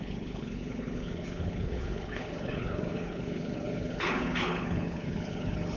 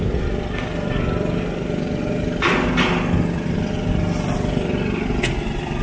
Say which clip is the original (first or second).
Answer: second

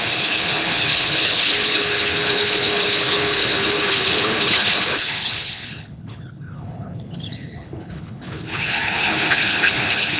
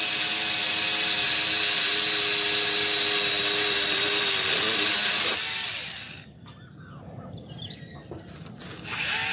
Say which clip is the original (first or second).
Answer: second